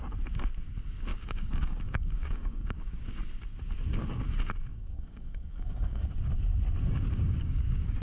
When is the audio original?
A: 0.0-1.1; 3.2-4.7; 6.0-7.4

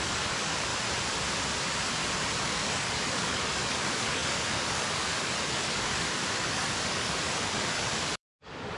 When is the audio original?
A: 0.7-2.4

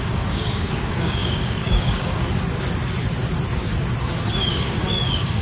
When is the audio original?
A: 2.2-4.5

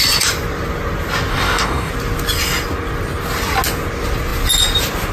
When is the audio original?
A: 0.0-1.3; 1.9-5.1

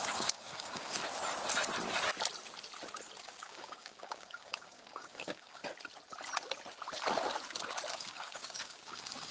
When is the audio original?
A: 1.0-3.2; 5.6-7.9